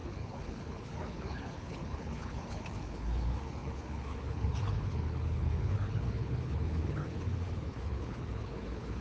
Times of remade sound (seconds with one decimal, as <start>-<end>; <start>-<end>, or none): 0.0-9.0